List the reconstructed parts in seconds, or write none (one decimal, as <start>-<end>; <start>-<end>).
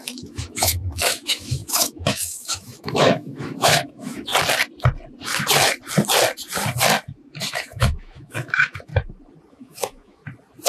0.0-4.3; 7.5-8.9; 9.5-10.2